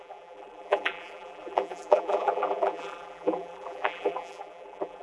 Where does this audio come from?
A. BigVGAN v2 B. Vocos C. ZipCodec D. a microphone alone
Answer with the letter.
A